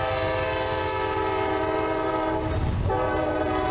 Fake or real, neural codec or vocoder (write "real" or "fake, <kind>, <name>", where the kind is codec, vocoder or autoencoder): fake, vocoder, BigVGAN v2